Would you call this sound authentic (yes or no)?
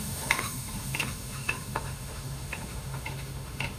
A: no